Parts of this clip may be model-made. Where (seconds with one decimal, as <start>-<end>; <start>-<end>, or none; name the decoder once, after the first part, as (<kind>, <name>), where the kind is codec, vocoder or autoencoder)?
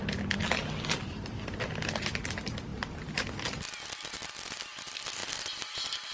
none